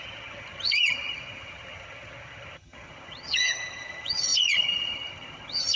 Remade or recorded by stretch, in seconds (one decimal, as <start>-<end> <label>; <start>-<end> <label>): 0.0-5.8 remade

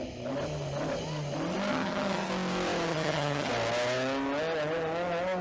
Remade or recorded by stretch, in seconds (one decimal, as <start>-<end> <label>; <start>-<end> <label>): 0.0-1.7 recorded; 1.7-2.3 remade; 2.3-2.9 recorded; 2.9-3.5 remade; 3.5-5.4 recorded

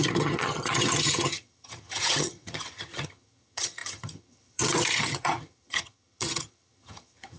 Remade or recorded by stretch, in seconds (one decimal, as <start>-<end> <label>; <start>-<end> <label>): 0.0-7.4 remade

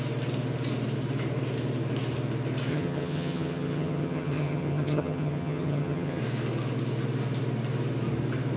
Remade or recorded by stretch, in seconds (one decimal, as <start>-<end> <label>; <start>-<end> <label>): 0.0-2.7 recorded; 2.7-6.2 remade; 6.2-8.6 recorded

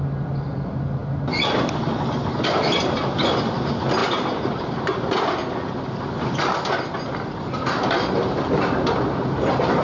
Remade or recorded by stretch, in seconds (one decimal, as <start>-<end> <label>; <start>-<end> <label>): 0.0-9.8 recorded